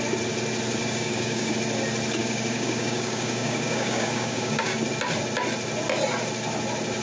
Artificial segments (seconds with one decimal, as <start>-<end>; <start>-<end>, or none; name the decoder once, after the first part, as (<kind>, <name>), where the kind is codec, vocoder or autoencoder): 0.8-1.5 (codec, DAC); 2.2-4.8